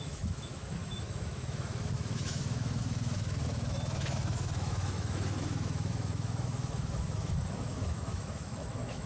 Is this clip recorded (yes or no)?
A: no